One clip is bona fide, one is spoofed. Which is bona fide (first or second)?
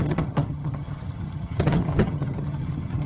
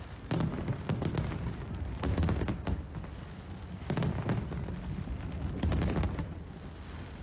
second